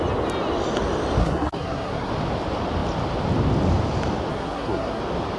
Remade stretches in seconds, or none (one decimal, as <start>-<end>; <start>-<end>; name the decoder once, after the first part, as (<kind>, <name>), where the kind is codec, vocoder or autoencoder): 1.2-2.1 (codec, SNAC); 4.3-5.0